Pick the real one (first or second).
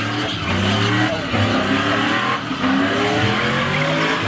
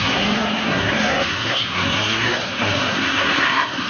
first